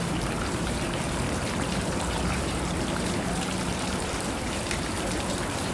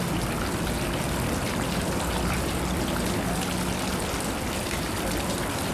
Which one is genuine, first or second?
second